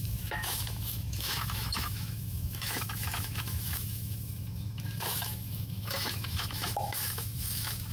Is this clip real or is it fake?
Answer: fake